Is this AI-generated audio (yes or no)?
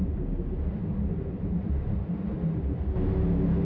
no